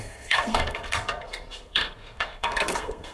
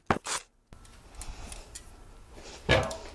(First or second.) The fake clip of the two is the first